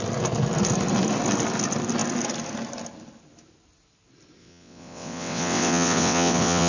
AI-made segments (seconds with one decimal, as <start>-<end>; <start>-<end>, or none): 4.4-6.7